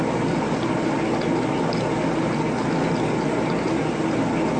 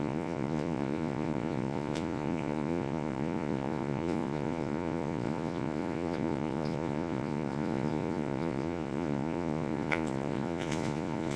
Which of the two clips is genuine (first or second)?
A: first